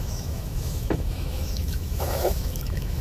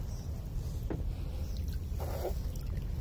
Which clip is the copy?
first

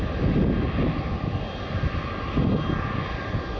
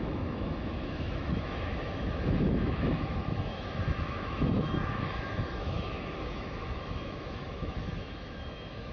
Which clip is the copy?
second